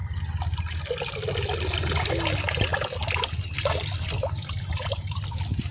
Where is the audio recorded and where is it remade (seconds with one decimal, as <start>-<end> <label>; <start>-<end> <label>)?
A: 0.0-5.7 recorded